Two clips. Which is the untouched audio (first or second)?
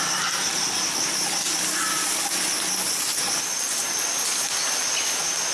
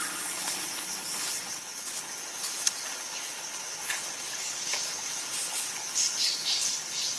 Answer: first